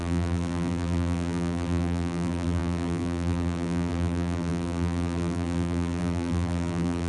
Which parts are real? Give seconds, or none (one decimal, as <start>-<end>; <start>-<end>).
none